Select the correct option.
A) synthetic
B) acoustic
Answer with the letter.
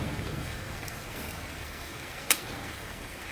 A